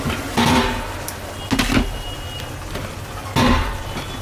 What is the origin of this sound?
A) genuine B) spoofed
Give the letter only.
A